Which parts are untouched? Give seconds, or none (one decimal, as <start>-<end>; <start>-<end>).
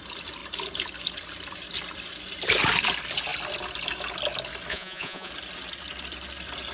0.0-4.7; 5.3-6.7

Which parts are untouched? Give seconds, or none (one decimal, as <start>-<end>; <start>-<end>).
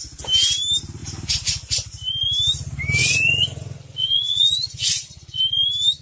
0.0-3.0; 5.4-6.0